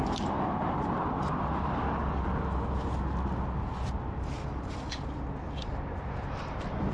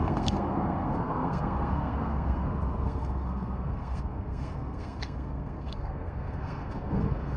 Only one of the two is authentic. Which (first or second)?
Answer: first